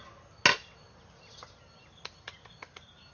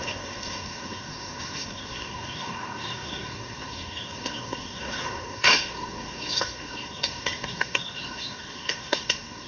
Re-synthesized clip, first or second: second